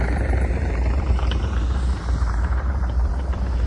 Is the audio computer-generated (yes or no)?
yes